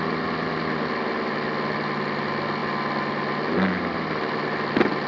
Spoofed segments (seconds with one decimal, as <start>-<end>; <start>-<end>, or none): none